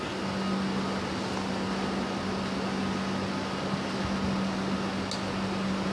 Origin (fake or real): real